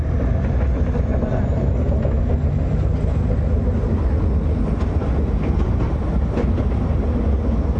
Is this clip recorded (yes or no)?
yes